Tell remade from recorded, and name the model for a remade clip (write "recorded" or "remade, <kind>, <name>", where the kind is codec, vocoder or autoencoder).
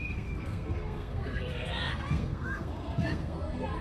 remade, codec, SNAC